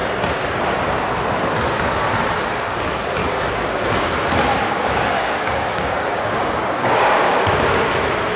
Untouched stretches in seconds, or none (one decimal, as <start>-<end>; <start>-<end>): 0.0-3.2; 4.1-4.6; 7.9-8.4